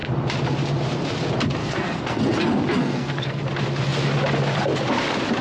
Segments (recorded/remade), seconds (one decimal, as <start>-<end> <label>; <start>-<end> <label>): 0.0-1.6 recorded; 1.6-2.2 remade; 2.2-2.8 recorded; 2.8-3.4 remade; 3.4-5.4 recorded